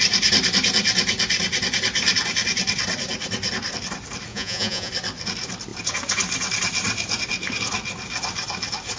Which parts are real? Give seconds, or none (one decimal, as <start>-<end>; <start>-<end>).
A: 0.0-4.3; 4.9-9.0